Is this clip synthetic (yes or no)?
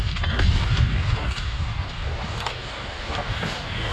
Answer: yes